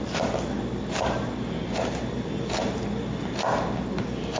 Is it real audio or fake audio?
real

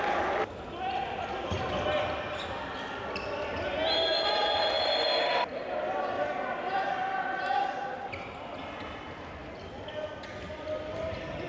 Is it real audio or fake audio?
real